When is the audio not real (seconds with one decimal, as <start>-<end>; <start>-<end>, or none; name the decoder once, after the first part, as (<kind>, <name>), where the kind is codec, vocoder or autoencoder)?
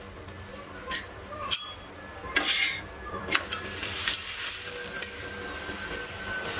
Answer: 0.5-4.5 (vocoder, BigVGAN v2)